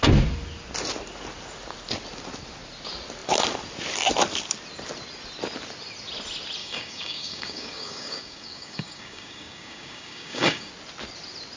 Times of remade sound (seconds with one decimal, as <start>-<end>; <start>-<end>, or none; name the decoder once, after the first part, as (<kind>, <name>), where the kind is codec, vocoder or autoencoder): 6.6-10.7 (codec, DAC)